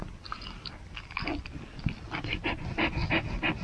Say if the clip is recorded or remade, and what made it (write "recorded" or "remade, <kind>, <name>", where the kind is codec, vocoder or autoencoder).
recorded